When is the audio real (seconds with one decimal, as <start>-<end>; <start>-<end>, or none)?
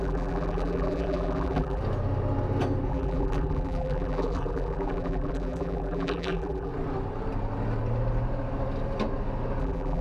1.8-2.9; 6.7-9.6